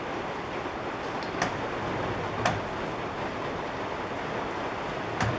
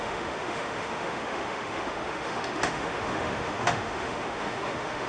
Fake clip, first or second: second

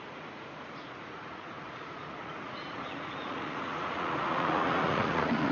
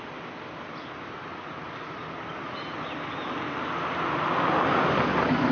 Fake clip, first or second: first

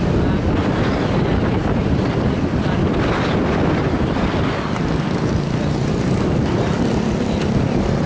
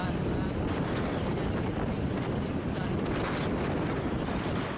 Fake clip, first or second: first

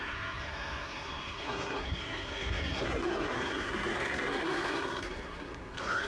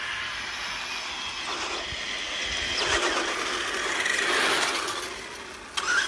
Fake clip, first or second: first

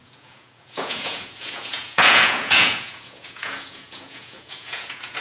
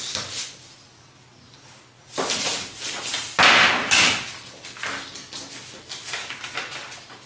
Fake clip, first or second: first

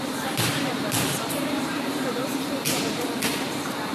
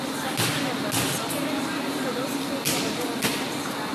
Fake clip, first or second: first